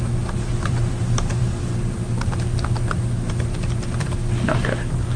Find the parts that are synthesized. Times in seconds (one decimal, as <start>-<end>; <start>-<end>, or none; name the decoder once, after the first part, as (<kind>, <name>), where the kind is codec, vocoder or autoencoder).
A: none